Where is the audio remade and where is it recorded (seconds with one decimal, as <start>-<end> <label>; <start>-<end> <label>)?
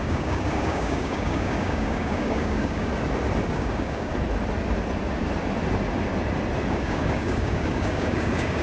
0.0-2.9 remade; 2.9-3.5 recorded; 3.5-4.1 remade; 4.1-6.7 recorded; 6.7-8.6 remade